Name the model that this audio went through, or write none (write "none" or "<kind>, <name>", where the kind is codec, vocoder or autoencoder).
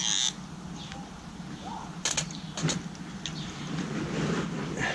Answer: none